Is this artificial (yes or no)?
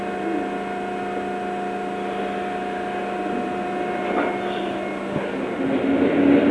no